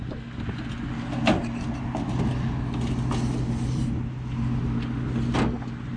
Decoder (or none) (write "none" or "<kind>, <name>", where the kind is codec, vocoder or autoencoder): none